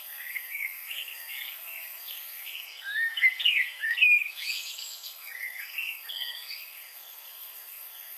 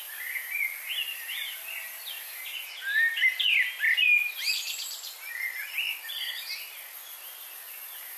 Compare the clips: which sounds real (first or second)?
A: second